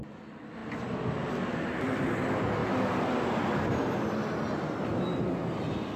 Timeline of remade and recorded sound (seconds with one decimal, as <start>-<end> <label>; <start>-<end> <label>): 0.0-2.6 recorded; 2.6-3.4 remade; 3.4-6.0 recorded